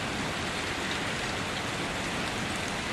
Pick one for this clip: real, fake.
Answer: real